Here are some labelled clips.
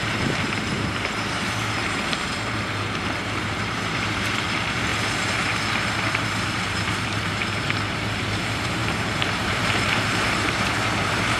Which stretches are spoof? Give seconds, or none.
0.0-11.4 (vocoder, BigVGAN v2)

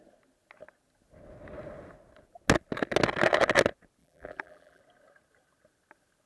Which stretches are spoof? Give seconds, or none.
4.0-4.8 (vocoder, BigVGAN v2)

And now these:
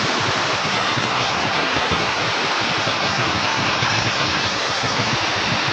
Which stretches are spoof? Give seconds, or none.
0.6-2.2 (codec, SNAC); 2.8-5.1